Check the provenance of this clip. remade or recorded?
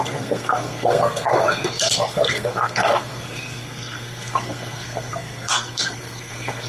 remade